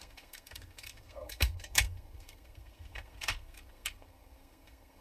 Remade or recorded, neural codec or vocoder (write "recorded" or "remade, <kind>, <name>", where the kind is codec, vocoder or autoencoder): remade, codec, SNAC